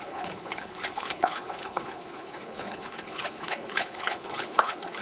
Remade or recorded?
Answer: remade